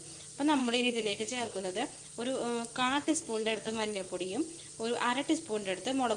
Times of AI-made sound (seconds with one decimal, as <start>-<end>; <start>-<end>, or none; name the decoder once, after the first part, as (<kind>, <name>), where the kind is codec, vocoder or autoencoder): 0.6-1.6 (codec, SNAC); 2.7-4.1